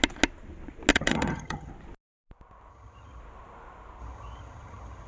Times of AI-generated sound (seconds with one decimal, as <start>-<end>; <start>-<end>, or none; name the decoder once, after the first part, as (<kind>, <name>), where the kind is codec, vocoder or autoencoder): 0.9-1.7 (vocoder, HiFi-GAN); 2.7-3.2; 4.0-5.1